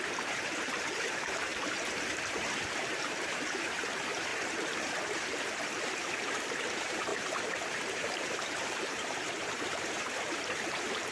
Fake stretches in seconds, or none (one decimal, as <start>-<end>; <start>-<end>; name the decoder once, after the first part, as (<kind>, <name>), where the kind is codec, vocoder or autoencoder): 0.0-11.1 (vocoder, BigVGAN v2)